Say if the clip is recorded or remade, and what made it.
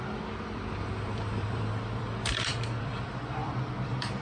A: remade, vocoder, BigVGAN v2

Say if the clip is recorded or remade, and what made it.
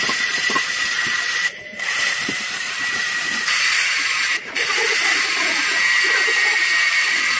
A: remade, vocoder, BigVGAN v2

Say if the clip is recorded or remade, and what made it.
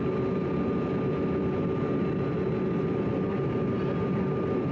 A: remade, vocoder, BigVGAN v2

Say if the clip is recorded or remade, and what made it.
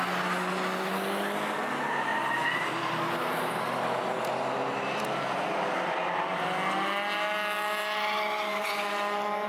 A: recorded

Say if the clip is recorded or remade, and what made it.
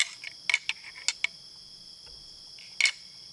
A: recorded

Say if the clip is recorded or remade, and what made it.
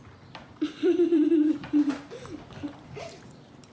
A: remade, vocoder, BigVGAN v2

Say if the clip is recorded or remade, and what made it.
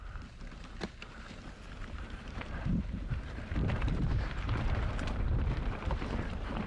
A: remade, vocoder, BigVGAN v2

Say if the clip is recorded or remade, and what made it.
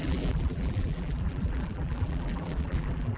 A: remade, vocoder, BigVGAN v2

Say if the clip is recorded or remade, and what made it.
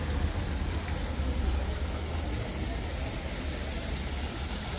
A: recorded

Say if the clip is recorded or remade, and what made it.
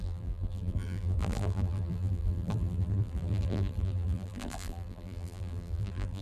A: remade, vocoder, BigVGAN v2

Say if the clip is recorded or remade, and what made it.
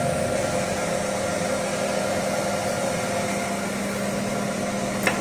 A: recorded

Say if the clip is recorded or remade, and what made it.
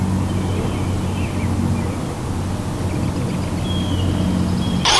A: recorded